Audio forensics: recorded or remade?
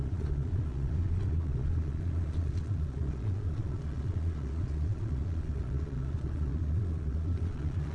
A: remade